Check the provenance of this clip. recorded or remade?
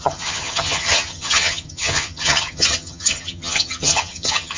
remade